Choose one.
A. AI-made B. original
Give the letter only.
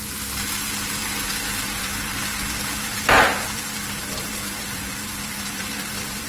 A